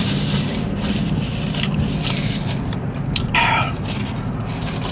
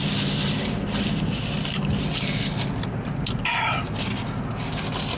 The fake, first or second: first